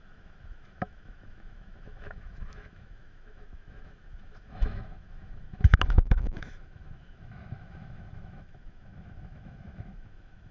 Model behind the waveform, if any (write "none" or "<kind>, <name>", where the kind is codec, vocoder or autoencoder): autoencoder, DAC-VAE